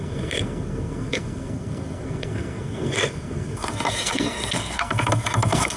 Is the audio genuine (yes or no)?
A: no